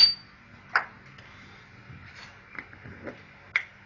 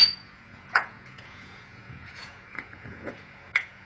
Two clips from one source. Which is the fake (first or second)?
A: second